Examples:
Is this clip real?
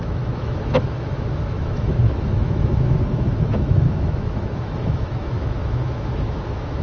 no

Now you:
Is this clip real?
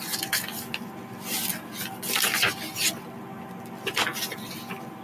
yes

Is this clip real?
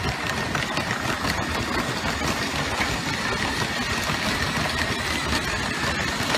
yes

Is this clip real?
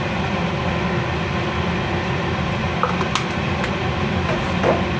yes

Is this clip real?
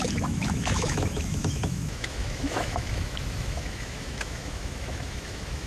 no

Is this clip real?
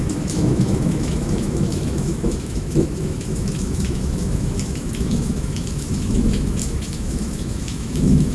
no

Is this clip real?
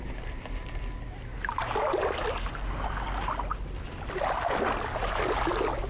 yes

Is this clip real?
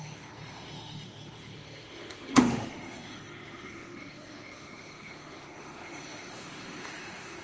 no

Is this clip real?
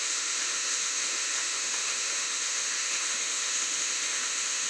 no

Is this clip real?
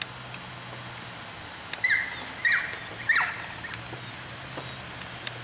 yes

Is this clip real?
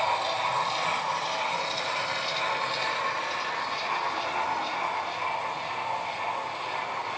yes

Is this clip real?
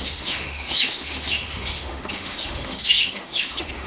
no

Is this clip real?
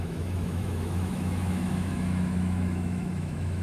no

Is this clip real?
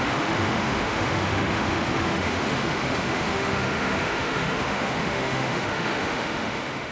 no